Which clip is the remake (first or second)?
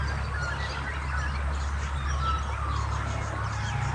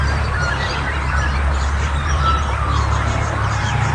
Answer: second